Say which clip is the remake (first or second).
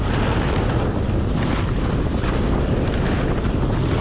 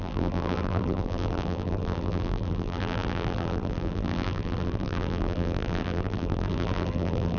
second